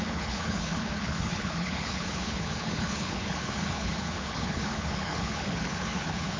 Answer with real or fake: fake